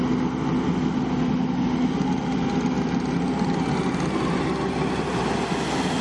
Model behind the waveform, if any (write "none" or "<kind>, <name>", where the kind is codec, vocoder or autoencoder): none